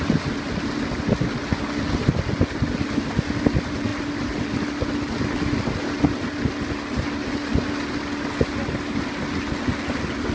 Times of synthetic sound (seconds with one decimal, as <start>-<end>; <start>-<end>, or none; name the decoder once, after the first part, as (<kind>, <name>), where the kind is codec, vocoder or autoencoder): none